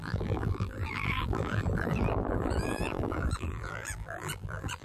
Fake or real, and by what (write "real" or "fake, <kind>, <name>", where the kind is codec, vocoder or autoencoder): fake, vocoder, BigVGAN v2